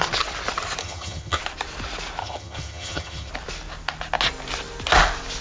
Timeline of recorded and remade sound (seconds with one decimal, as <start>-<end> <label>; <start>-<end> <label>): 0.0-0.8 recorded; 0.8-1.4 remade; 1.4-2.2 recorded; 2.2-3.3 remade; 3.3-5.4 recorded